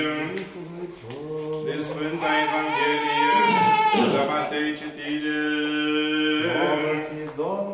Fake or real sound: real